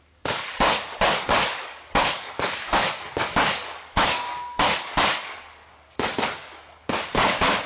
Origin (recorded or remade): remade